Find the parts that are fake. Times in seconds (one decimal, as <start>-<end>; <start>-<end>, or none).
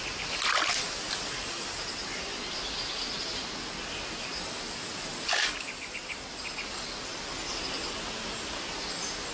none